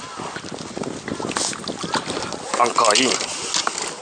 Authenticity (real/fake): real